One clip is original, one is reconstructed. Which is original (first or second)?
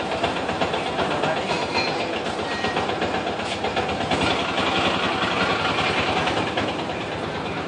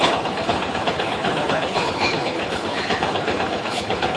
first